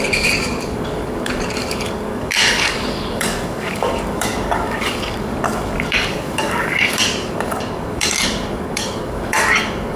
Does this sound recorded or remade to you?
remade